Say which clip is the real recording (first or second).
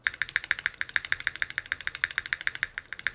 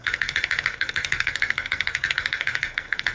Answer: first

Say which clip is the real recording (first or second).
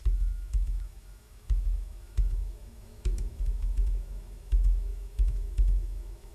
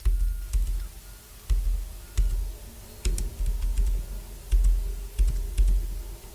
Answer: second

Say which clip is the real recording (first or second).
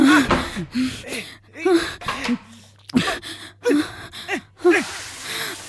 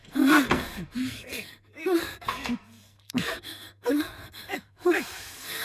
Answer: first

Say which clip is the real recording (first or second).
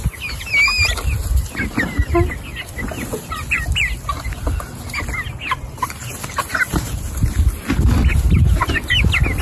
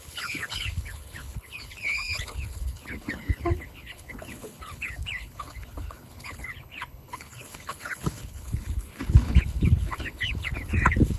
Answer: first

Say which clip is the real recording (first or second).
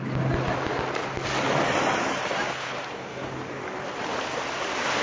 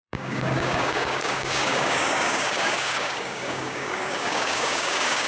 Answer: first